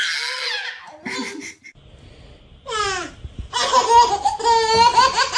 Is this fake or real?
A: real